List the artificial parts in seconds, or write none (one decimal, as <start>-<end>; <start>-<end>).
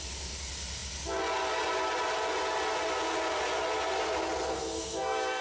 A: 4.5-5.4